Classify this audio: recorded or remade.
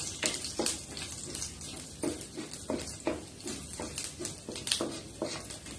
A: recorded